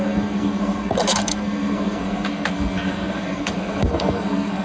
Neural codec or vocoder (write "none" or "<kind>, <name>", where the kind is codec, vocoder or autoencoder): codec, SNAC